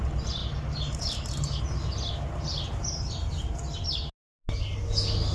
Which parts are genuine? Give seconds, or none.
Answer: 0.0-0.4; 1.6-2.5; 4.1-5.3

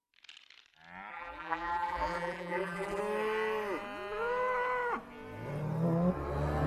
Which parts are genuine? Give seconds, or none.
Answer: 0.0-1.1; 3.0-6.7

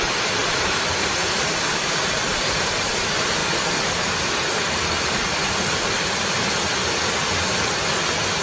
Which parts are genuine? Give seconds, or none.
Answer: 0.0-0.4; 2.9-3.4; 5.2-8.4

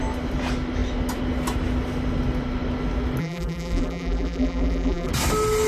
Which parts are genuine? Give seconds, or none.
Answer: 0.0-3.2; 5.1-5.7